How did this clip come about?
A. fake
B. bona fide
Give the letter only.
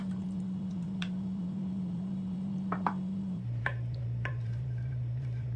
A